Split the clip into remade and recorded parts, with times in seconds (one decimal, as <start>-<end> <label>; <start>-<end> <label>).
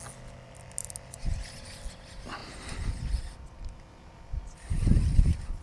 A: 0.0-5.6 recorded